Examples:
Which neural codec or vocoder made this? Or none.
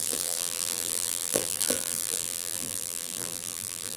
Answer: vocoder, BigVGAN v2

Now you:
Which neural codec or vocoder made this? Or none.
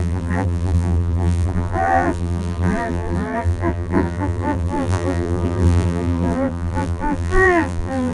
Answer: vocoder, BigVGAN v2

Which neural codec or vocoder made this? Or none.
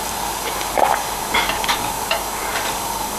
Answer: codec, DAC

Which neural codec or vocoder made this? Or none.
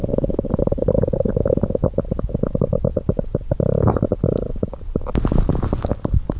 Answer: none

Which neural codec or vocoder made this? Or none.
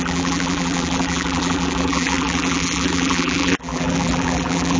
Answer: vocoder, BigVGAN v2